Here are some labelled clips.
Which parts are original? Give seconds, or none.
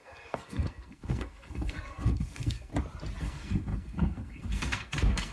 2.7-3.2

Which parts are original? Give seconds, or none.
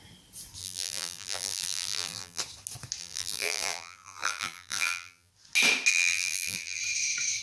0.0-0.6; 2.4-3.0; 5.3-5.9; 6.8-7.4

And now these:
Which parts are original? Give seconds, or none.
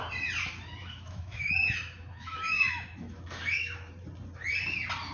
0.0-0.8; 3.9-5.1